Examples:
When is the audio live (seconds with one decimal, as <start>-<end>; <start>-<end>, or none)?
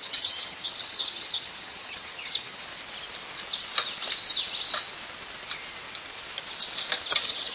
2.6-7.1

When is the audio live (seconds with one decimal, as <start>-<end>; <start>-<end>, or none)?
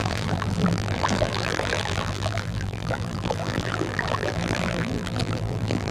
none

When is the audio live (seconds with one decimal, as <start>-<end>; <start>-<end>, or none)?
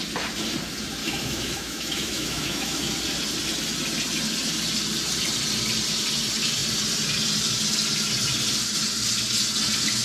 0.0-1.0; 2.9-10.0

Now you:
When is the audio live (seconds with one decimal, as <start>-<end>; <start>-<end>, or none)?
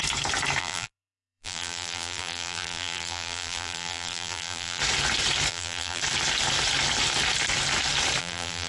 0.0-0.6; 4.8-5.5; 6.0-8.2